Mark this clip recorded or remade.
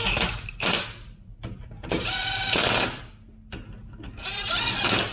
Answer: recorded